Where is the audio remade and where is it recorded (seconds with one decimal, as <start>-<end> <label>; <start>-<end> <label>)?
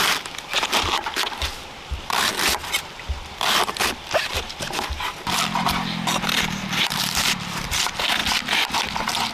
0.0-9.3 remade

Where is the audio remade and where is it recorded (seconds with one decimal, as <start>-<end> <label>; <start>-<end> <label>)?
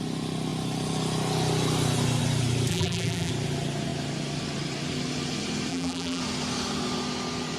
0.0-2.7 recorded; 2.7-3.3 remade; 3.3-5.7 recorded; 5.7-6.2 remade; 6.2-7.6 recorded